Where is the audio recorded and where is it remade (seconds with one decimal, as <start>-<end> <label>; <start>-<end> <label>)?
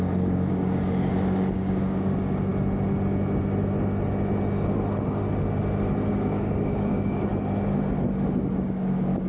0.0-2.5 remade; 2.5-6.1 recorded; 6.1-7.3 remade; 7.3-8.4 recorded; 8.4-9.3 remade